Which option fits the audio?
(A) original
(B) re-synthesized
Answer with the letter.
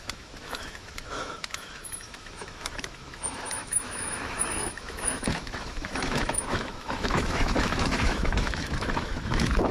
B